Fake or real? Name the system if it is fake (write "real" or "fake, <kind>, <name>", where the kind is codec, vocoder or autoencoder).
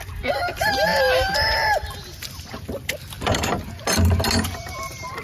real